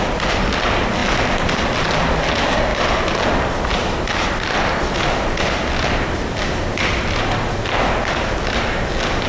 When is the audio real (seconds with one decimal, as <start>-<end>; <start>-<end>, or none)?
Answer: 0.0-9.3